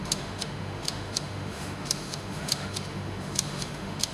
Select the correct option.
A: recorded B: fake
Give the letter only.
B